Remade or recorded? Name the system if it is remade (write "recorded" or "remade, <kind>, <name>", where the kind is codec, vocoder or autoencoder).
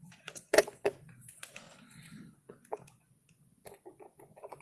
remade, vocoder, Vocos